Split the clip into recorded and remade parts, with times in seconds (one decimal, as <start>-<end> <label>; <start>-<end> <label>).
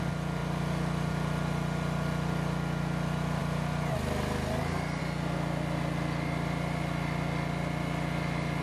0.0-8.6 recorded